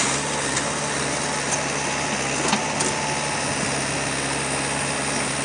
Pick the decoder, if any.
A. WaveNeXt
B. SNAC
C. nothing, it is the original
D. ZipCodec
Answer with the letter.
C